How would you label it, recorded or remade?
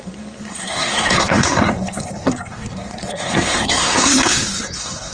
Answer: remade